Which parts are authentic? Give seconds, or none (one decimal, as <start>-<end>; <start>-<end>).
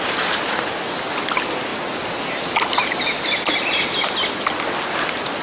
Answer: 0.0-5.4